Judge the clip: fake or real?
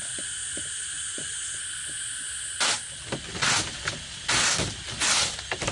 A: real